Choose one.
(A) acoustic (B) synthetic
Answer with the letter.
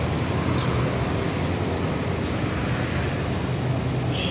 A